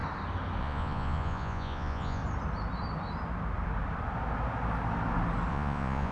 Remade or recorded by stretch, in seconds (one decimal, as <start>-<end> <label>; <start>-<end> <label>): 0.0-0.6 recorded; 0.6-2.2 remade; 2.2-5.5 recorded; 5.5-6.1 remade